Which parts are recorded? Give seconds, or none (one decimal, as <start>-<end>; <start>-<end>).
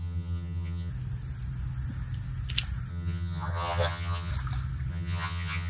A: 0.9-2.9; 4.3-4.9